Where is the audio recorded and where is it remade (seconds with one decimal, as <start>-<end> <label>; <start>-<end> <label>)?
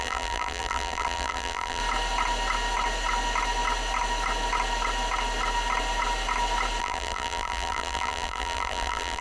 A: 0.0-1.8 remade; 1.8-6.8 recorded; 6.8-9.2 remade